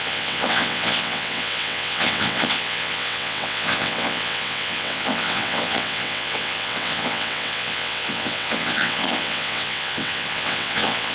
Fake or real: fake